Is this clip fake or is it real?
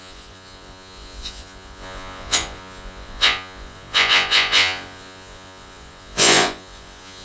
fake